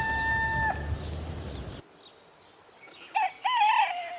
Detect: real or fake real